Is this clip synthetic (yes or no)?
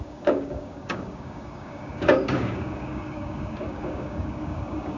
yes